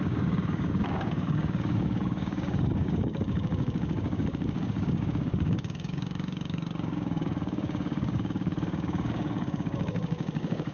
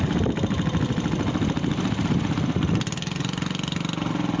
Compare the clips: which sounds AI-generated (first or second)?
first